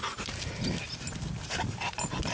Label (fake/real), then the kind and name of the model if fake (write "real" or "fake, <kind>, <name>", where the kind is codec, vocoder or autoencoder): real